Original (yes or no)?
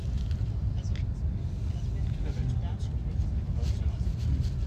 yes